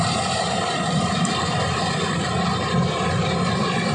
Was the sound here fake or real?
real